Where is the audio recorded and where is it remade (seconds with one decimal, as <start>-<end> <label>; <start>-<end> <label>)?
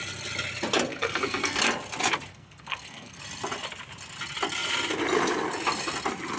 0.0-0.9 recorded; 0.9-1.6 remade; 1.6-2.3 recorded; 2.3-3.2 remade; 3.2-6.4 recorded